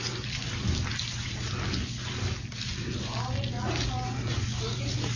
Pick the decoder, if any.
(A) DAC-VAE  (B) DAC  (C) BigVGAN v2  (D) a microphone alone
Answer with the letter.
D